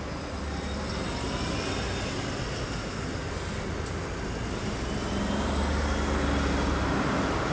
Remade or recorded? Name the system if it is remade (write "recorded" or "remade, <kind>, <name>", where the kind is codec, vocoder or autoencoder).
recorded